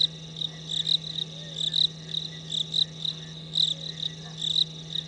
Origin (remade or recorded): recorded